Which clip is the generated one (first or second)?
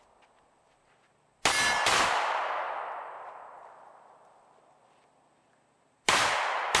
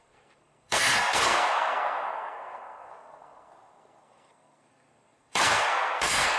second